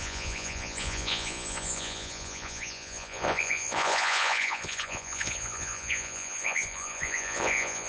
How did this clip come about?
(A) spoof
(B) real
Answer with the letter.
A